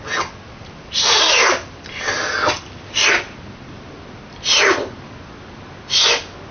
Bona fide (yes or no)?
yes